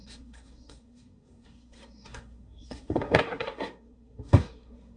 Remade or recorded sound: remade